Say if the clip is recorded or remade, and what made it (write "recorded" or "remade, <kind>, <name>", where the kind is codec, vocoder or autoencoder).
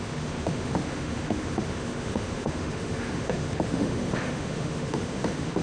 remade, autoencoder, DAC-VAE